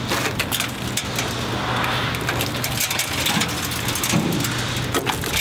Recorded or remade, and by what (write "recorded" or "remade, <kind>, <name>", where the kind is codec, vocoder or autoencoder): recorded